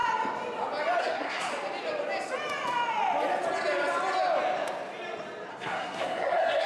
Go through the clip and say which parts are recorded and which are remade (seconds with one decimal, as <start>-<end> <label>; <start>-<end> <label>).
0.0-1.0 recorded; 1.0-1.5 remade; 1.5-5.5 recorded; 5.5-6.7 remade